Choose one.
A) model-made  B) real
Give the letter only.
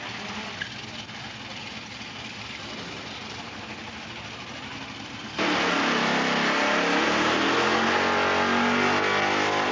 B